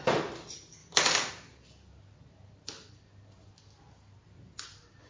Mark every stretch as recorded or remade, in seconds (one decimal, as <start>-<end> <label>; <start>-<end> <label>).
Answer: 0.0-5.1 recorded